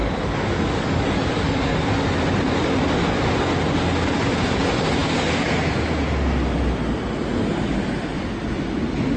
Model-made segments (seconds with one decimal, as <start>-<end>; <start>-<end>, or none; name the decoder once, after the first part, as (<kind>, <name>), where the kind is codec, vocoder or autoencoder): 0.0-1.8 (codec, DAC)